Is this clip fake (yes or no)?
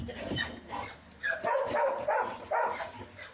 no